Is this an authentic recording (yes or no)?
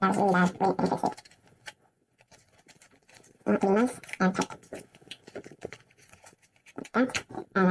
no